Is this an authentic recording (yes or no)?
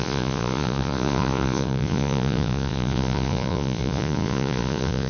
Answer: no